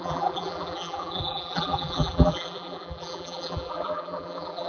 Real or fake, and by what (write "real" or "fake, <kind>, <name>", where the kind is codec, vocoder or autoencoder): fake, vocoder, BigVGAN v2